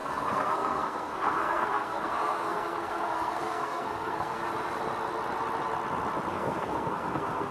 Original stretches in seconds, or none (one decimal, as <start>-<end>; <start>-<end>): 4.4-6.3